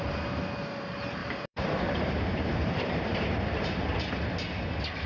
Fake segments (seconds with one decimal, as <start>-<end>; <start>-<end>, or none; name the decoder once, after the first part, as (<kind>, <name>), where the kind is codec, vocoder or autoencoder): 1.2-3.8 (vocoder, BigVGAN v2)